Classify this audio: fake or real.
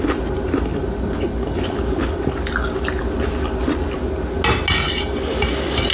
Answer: real